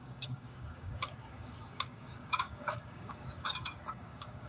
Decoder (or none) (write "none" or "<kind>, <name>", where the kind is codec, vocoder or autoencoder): codec, DAC